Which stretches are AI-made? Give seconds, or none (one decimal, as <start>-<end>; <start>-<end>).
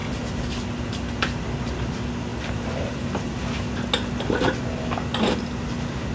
2.3-3.4